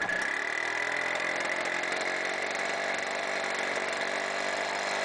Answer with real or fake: real